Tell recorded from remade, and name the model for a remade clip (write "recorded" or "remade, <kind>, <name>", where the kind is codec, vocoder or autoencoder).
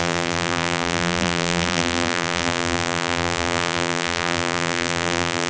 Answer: remade, vocoder, BigVGAN v2